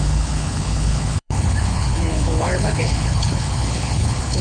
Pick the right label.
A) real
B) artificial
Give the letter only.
B